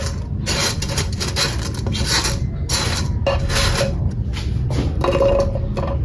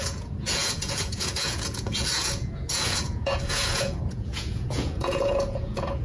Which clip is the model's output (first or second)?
second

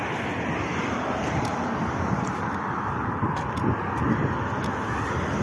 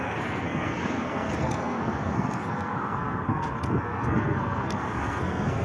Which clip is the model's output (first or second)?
second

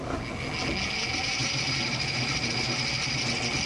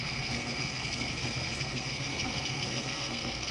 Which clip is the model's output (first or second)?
second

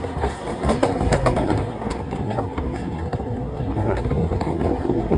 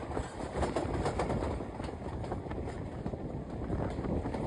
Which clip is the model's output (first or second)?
first